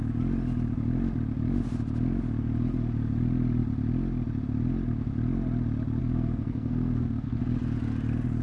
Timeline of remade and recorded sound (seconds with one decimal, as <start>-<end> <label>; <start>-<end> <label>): 0.0-6.0 recorded; 6.0-7.4 remade; 7.4-8.4 recorded